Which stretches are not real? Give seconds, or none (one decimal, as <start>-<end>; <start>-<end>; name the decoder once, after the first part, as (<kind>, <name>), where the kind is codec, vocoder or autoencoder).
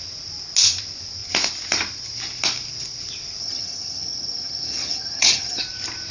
3.4-5.6 (vocoder, HiFi-GAN)